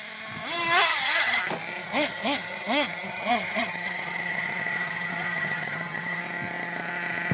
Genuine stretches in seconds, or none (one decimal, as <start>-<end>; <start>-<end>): 0.0-0.9; 1.4-1.8; 6.2-7.3